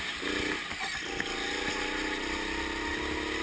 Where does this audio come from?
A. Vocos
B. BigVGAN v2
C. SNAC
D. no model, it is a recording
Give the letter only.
D